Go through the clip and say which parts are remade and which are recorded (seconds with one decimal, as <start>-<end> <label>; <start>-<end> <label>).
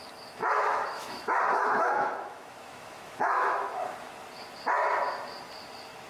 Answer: 0.0-0.4 recorded; 0.4-4.1 remade; 4.1-6.1 recorded